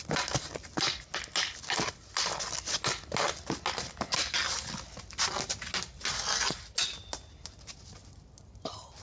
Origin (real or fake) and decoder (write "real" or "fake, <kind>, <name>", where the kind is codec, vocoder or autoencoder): real